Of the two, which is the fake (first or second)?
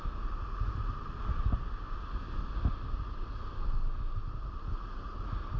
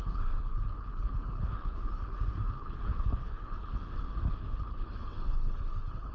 second